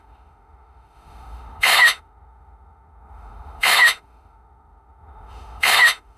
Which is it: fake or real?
fake